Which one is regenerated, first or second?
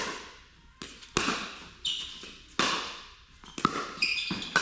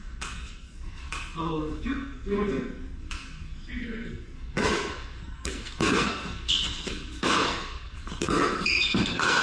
second